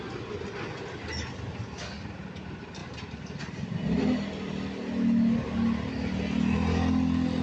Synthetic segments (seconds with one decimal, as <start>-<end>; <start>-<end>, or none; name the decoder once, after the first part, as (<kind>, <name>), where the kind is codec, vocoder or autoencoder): none